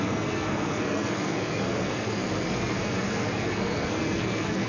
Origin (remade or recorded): remade